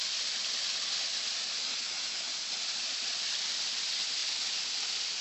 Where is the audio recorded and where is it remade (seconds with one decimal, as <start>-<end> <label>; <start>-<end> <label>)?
0.0-1.6 recorded; 1.6-2.3 remade; 2.3-5.2 recorded